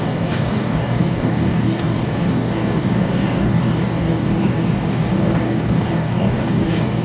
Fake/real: fake